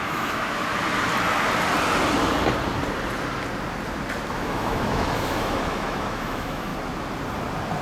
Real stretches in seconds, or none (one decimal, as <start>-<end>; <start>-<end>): 0.7-4.3; 6.7-7.8